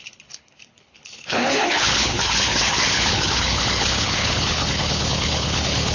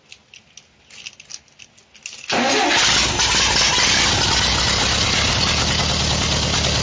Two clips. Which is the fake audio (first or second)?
first